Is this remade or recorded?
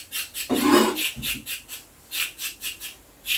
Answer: recorded